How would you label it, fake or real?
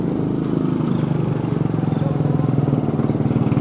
real